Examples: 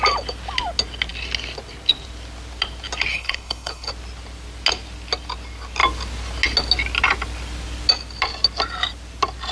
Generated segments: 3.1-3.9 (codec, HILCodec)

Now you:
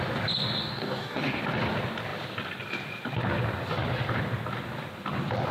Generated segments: 0.6-1.4 (codec, DAC)

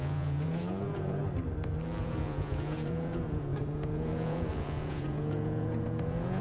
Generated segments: 0.0-1.2 (vocoder, Vocos); 2.0-6.4

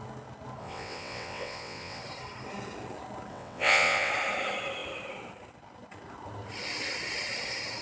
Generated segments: 0.6-2.0 (vocoder, WaveNeXt); 3.3-4.1

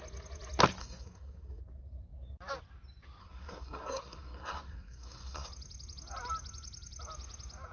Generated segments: 0.8-1.6 (codec, SNAC); 3.2-5.5

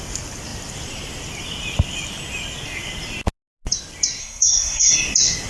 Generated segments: 4.2-4.9 (codec, SNAC)

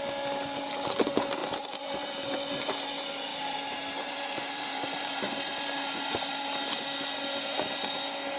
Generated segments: 1.4-2.3 (vocoder, BigVGAN v2); 3.3-6.6

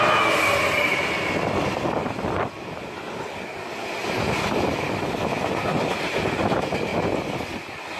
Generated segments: none